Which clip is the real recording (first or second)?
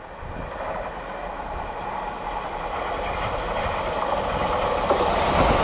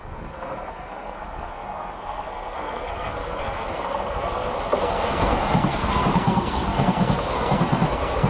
first